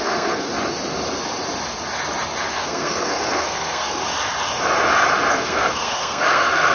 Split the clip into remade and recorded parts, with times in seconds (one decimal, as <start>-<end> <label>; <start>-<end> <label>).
0.0-0.5 remade; 0.5-2.5 recorded; 2.5-4.0 remade; 4.0-5.3 recorded; 5.3-6.7 remade